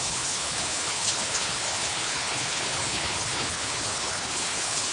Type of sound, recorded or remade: remade